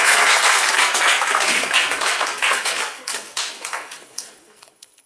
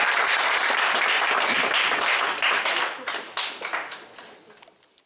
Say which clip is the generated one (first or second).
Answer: first